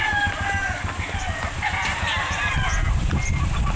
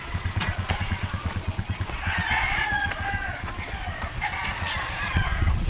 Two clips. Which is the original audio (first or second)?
first